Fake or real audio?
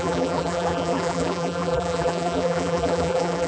fake